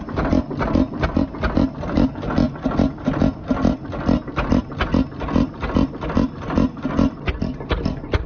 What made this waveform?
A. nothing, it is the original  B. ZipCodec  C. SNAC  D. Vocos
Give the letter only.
A